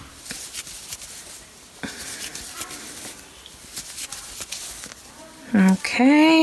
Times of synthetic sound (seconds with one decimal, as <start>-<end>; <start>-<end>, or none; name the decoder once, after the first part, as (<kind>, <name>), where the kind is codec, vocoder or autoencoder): none